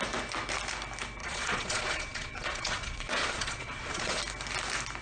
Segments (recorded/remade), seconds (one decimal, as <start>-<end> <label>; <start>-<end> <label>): 0.0-1.2 recorded; 1.2-4.2 remade; 4.2-5.0 recorded